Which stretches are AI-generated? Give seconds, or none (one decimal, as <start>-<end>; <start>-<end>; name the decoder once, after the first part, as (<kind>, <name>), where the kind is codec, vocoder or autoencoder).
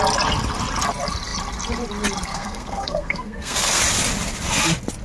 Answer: 2.3-3.8 (codec, SNAC)